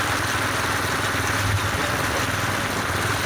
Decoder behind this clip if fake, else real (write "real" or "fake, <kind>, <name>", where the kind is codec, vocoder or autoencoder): real